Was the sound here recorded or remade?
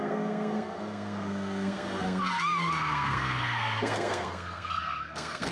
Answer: remade